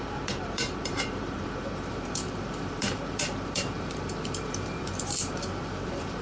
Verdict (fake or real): fake